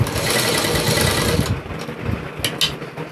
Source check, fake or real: real